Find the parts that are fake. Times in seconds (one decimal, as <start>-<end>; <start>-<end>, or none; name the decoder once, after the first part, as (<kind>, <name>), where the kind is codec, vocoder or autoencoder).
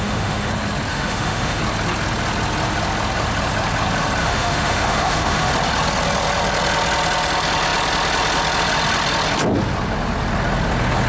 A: 0.0-0.5 (autoencoder, DAC-VAE); 0.9-1.6; 4.2-5.5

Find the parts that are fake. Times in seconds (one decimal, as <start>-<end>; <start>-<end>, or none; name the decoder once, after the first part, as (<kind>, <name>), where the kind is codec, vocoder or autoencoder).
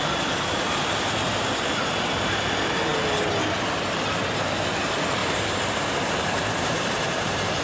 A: 5.2-7.6 (vocoder, BigVGAN v2)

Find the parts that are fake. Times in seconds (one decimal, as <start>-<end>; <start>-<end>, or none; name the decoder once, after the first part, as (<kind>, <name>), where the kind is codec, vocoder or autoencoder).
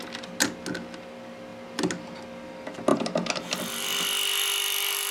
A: none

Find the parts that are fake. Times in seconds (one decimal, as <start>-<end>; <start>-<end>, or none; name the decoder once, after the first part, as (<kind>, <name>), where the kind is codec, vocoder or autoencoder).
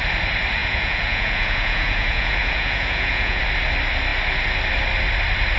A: 0.6-3.4 (vocoder, Vocos)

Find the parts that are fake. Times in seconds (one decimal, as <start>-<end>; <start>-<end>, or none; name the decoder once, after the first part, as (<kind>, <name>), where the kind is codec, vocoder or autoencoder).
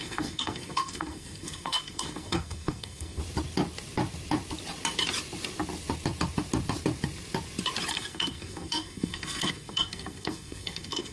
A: 0.0-3.2 (codec, SNAC); 7.9-11.1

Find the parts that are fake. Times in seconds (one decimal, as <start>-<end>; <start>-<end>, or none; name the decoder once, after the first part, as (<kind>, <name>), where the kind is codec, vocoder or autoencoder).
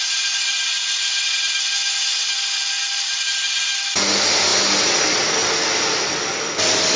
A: none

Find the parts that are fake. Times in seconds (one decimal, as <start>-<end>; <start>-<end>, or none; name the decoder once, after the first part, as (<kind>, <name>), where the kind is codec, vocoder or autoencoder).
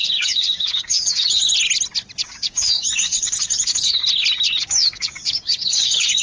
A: 0.0-1.5 (codec, DAC); 2.2-4.0; 4.6-6.2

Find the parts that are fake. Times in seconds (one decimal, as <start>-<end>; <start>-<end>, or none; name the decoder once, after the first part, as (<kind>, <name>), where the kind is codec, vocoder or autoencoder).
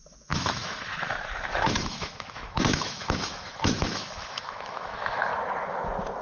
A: 0.0-5.3 (autoencoder, DAC-VAE)